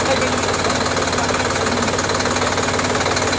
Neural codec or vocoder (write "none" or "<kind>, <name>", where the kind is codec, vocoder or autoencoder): none